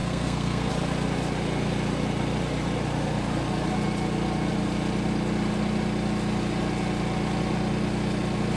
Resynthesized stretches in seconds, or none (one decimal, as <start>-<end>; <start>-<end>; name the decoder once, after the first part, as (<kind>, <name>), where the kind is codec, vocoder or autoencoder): 0.0-0.7 (codec, SNAC)

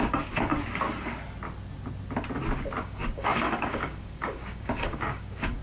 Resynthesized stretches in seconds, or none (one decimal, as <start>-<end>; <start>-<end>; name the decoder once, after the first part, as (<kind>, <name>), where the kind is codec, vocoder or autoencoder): 0.0-0.5 (codec, DAC); 2.8-5.6

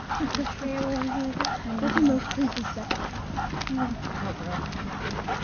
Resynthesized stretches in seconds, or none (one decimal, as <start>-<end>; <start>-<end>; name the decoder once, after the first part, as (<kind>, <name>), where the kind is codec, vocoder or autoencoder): none

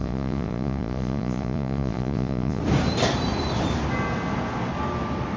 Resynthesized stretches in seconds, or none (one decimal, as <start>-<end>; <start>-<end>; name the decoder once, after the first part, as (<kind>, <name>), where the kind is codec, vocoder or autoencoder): 0.0-2.6 (vocoder, Vocos)

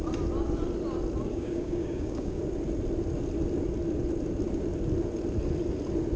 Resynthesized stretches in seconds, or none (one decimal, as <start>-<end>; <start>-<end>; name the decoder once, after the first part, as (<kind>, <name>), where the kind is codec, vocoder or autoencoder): 1.3-2.4 (codec, DAC)

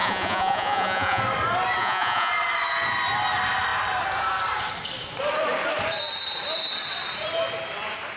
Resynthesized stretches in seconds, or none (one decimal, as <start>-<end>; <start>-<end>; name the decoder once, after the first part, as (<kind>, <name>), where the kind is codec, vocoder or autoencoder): 0.0-1.2 (vocoder, Vocos); 1.8-2.3